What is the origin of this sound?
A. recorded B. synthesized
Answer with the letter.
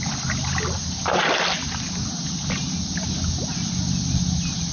A